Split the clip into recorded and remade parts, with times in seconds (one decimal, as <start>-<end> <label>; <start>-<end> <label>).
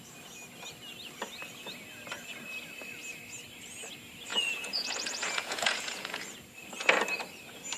0.0-4.3 recorded; 4.3-6.2 remade; 6.2-7.8 recorded